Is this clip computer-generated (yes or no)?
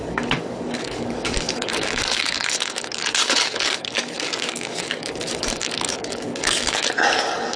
yes